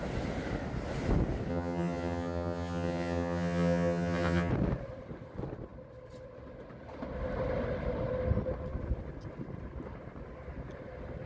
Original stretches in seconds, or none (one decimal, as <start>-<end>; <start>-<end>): 0.0-1.5; 4.5-11.3